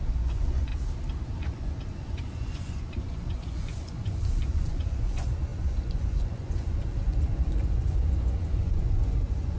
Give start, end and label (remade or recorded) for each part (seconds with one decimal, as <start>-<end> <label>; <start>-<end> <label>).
0.0-0.7 remade; 0.7-1.4 recorded; 1.4-9.6 remade